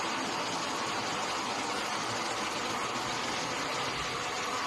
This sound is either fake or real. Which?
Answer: real